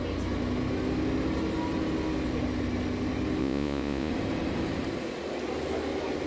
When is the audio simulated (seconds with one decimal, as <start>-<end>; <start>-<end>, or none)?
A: 3.4-4.1

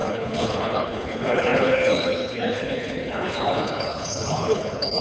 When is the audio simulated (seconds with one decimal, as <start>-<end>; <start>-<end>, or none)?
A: 0.0-5.0

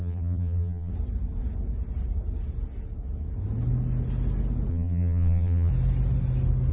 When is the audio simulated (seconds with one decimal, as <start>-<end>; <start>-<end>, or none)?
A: 0.0-0.9; 4.7-5.7

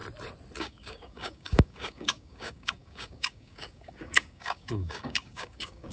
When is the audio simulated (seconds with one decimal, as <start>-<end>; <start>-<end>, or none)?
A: 0.6-5.9

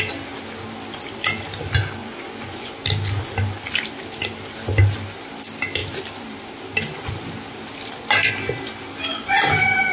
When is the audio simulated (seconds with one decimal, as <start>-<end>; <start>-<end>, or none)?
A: 2.0-2.7